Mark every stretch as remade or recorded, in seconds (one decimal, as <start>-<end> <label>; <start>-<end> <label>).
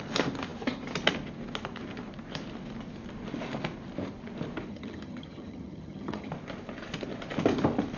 0.0-4.7 recorded; 4.7-6.3 remade; 6.3-8.0 recorded